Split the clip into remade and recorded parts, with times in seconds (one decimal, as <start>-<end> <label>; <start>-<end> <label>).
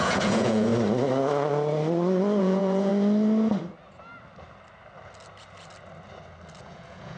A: 0.0-0.7 remade; 0.7-2.4 recorded; 2.4-2.9 remade; 2.9-6.6 recorded; 6.6-7.2 remade